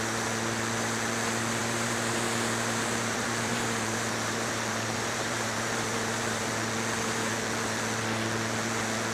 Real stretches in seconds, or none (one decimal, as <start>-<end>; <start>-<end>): 0.0-1.6; 6.5-9.1

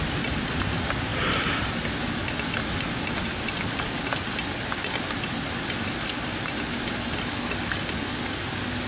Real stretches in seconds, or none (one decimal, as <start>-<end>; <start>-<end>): 0.0-8.9

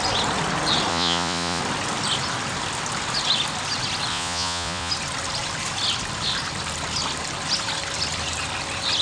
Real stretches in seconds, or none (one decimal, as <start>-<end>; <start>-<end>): 0.0-0.9; 1.6-4.1; 4.9-9.0

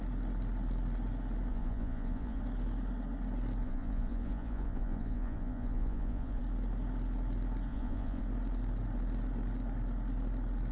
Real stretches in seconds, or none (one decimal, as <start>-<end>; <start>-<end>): 0.0-1.5; 2.4-3.6; 6.4-7.7; 8.2-10.7

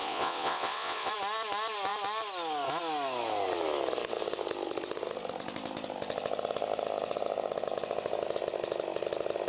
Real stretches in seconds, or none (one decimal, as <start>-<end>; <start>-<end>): 1.1-9.5

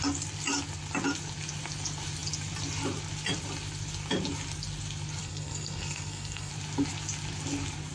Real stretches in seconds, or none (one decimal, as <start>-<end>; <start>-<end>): 0.0-5.2; 6.5-7.9